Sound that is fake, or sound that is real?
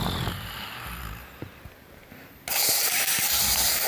real